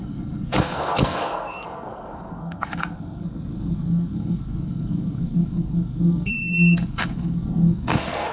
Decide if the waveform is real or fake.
fake